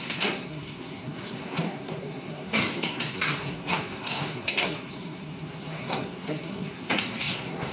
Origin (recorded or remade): remade